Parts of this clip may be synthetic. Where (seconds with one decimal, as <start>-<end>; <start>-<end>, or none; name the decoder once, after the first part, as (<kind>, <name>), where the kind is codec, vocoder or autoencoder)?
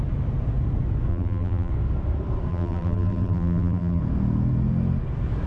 1.1-1.7 (vocoder, BigVGAN v2); 2.5-4.0